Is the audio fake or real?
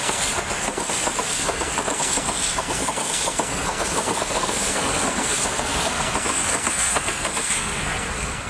fake